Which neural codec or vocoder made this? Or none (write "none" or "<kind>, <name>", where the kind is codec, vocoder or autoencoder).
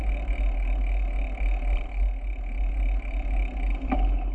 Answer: none